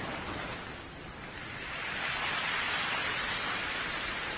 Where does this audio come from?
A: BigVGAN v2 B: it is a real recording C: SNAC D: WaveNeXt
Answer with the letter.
B